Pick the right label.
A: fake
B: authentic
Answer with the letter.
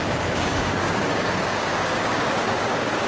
A